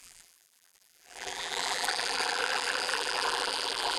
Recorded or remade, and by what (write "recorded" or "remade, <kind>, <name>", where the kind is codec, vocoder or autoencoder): remade, vocoder, BigVGAN v2